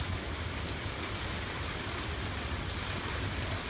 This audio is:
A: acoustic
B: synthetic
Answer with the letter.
A